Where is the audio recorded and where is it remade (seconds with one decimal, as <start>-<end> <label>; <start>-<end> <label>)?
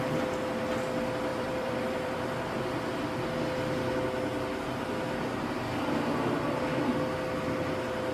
0.0-1.3 recorded; 1.3-2.6 remade; 2.6-8.1 recorded